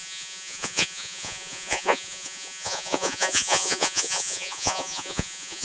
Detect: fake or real fake